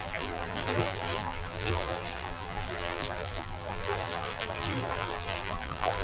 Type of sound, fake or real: fake